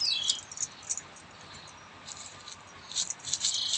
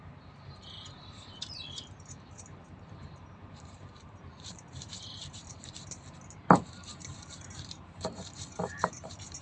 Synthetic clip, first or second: second